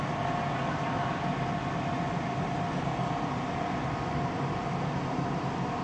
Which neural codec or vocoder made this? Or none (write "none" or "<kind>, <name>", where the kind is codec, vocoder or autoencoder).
none